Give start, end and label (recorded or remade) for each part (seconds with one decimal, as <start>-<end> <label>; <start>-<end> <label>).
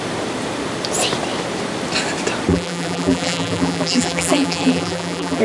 0.0-2.5 recorded; 2.5-5.4 remade